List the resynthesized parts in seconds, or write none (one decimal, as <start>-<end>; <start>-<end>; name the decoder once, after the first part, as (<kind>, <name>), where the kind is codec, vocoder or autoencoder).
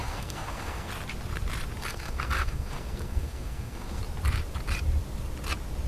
0.0-0.9 (codec, SNAC); 1.9-4.0